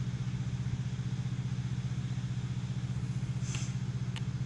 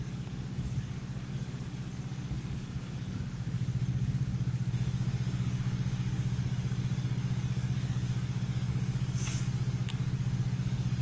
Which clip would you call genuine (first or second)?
first